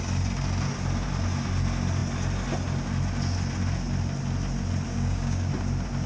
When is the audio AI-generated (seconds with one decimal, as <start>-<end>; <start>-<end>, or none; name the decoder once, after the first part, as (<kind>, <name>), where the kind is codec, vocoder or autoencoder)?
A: 4.9-5.5 (codec, DAC)

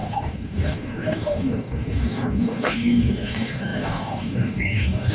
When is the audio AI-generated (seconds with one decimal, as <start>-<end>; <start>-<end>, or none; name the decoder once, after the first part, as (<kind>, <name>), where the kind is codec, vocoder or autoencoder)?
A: 0.0-5.1 (codec, DAC)

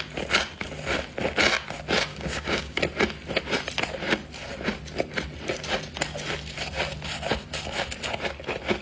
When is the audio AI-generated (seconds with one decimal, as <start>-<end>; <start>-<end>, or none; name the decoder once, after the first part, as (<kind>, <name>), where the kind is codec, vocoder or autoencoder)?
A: 2.1-2.8 (codec, DAC)

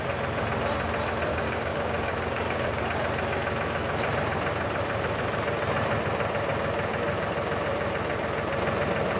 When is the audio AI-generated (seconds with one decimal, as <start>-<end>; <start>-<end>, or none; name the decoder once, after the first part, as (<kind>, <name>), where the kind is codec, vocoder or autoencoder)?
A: 1.3-2.8 (codec, DAC)

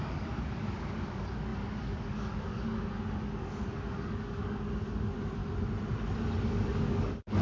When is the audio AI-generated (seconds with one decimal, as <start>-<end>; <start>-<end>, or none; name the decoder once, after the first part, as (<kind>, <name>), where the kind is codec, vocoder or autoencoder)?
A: 0.0-5.4 (codec, DAC); 6.4-7.4

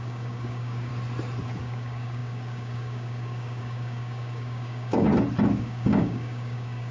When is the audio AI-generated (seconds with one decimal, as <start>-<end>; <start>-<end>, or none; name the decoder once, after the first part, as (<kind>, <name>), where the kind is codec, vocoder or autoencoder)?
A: 0.0-0.9 (codec, DAC); 1.6-5.1; 5.6-6.9

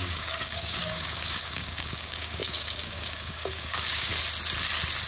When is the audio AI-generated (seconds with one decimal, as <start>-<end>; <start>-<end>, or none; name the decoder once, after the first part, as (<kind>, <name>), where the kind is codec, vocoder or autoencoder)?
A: 0.0-4.1 (codec, DAC)